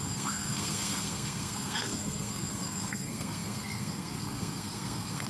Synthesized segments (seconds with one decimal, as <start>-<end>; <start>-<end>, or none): 0.0-5.3